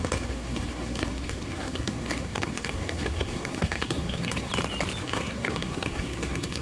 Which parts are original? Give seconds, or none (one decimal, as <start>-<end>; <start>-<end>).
4.5-5.0